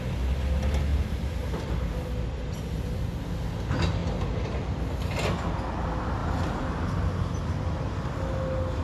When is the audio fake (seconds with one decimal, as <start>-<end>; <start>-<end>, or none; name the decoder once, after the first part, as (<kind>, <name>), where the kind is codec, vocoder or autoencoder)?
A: 0.9-1.7 (vocoder, BigVGAN v2); 6.2-7.3